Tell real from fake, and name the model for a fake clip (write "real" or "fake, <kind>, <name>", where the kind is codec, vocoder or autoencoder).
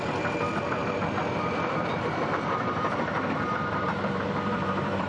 fake, vocoder, BigVGAN v2